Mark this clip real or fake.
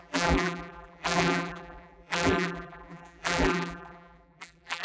fake